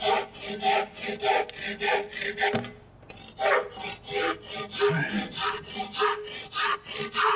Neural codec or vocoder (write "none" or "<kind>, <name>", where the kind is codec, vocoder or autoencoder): none